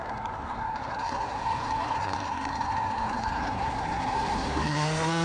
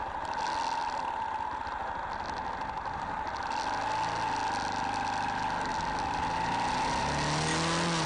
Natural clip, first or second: second